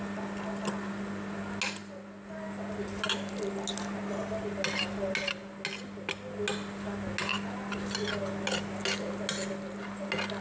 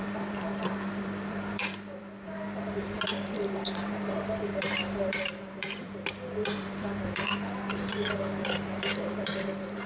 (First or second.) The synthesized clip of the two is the second